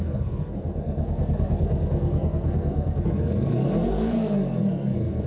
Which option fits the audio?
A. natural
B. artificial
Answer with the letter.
B